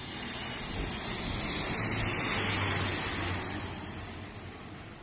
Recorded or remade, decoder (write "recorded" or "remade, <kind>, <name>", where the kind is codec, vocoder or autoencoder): recorded